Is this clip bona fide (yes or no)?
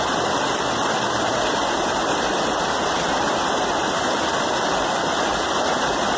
yes